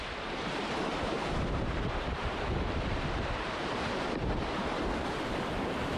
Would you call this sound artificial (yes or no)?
yes